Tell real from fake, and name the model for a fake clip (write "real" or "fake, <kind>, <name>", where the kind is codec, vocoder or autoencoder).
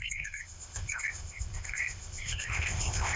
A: fake, codec, ZipCodec